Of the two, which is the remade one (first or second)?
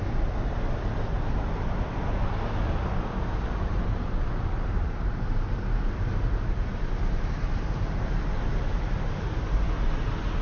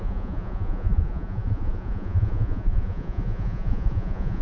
second